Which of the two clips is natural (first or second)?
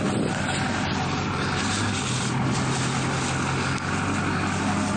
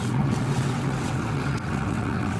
first